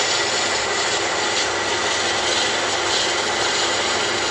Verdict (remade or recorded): recorded